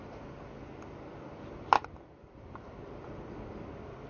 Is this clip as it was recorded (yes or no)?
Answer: yes